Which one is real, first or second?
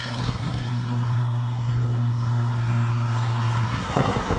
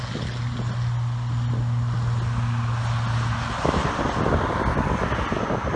second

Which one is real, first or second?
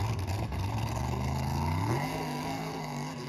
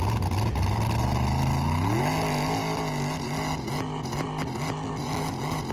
second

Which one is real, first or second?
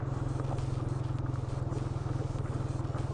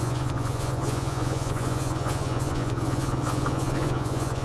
first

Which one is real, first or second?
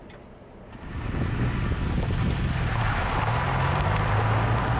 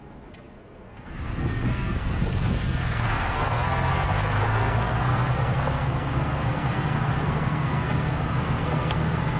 first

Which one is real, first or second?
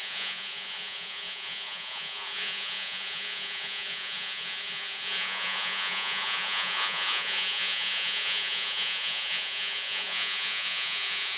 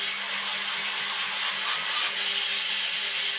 second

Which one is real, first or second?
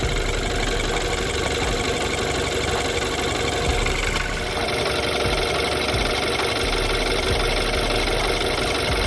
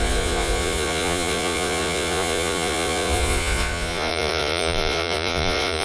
first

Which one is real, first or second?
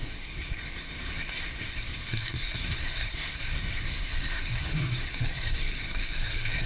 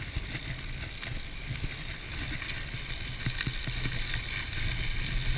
second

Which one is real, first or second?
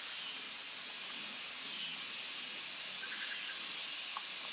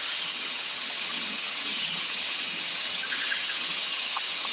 first